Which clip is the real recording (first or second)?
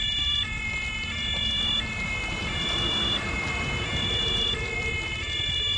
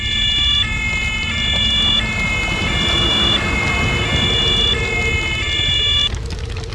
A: second